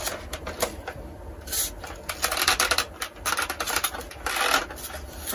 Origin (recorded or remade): recorded